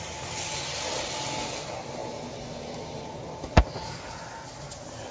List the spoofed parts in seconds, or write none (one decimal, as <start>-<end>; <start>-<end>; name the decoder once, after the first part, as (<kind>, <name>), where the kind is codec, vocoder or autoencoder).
none